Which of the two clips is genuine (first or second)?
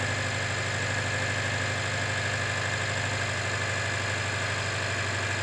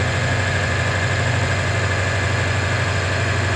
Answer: first